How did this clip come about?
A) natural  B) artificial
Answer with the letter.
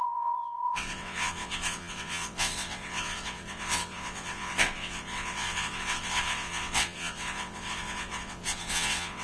B